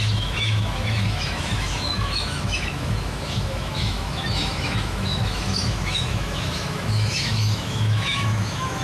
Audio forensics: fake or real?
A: fake